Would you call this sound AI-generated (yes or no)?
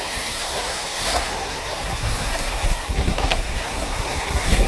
yes